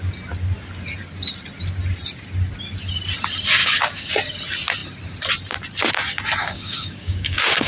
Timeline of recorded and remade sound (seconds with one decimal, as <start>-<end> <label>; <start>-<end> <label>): 0.0-3.6 recorded; 3.6-4.1 remade; 4.1-6.4 recorded; 6.4-7.7 remade